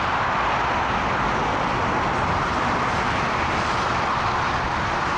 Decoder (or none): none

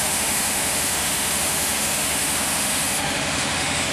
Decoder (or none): autoencoder, DAC-VAE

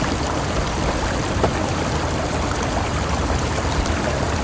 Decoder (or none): none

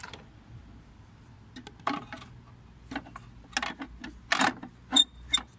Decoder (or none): none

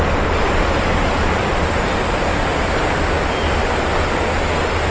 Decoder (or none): none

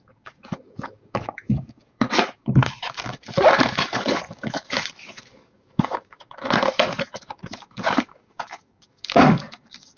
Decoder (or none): codec, DAC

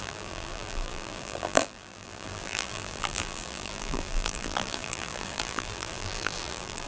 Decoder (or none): vocoder, BigVGAN v2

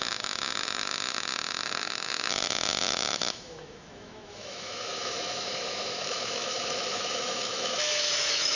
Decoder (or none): autoencoder, DAC-VAE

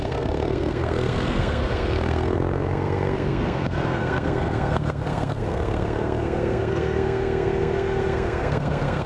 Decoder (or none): codec, SNAC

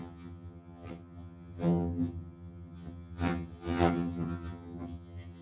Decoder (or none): vocoder, HiFi-GAN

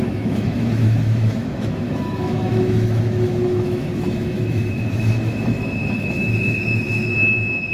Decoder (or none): autoencoder, DAC-VAE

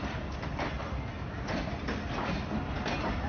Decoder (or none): none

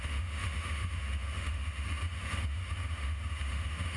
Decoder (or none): autoencoder, DAC-VAE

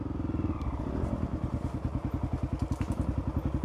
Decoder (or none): none